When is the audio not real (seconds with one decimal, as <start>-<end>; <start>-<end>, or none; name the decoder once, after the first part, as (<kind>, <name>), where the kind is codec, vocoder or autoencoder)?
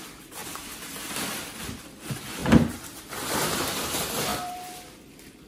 0.0-5.5 (vocoder, BigVGAN v2)